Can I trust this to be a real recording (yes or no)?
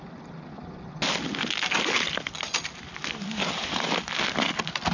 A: yes